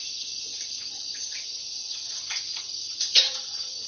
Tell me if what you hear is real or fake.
fake